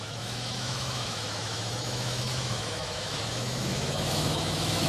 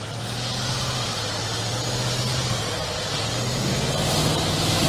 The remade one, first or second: first